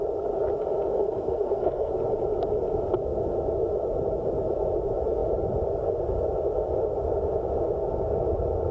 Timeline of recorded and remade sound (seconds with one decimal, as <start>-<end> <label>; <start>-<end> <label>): 0.0-0.9 recorded; 0.9-1.9 remade; 1.9-8.7 recorded